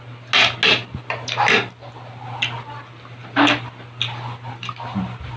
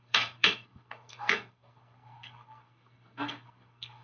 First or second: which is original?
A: first